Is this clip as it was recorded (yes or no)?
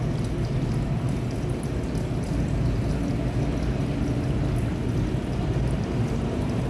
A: yes